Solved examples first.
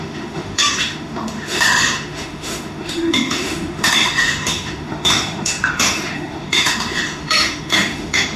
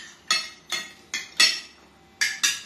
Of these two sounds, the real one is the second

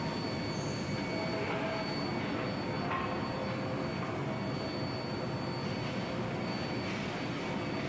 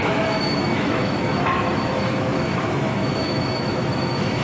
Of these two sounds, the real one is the first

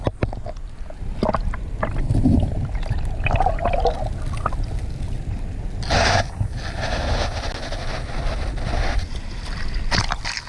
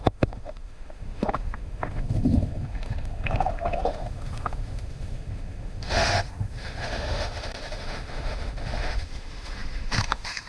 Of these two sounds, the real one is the first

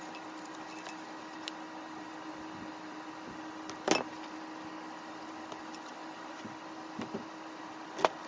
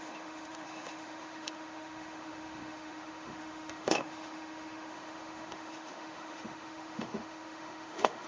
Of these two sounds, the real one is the first